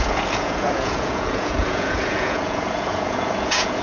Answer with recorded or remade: remade